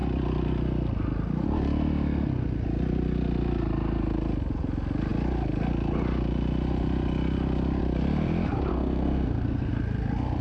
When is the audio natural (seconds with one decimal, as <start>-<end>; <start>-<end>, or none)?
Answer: 0.0-8.7; 9.7-10.4